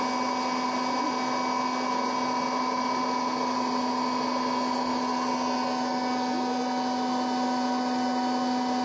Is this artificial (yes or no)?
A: no